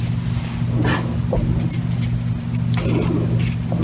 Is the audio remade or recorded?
recorded